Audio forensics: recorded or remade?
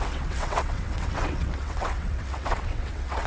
remade